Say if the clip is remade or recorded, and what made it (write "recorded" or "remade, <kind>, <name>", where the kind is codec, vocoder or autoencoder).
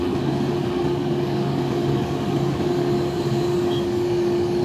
remade, codec, DAC